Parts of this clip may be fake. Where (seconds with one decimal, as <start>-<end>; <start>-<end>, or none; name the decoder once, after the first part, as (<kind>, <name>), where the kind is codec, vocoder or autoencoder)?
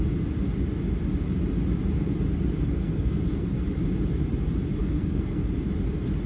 2.8-3.6 (codec, SNAC); 4.8-5.5